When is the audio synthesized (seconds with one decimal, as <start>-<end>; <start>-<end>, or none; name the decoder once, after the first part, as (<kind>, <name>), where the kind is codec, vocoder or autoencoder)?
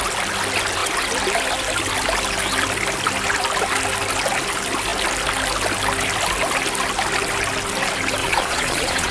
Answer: 8.2-9.1 (vocoder, Vocos)